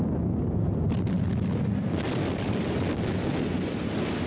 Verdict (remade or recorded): remade